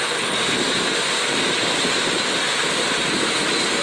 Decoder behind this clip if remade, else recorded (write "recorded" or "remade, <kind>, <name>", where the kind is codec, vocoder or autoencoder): recorded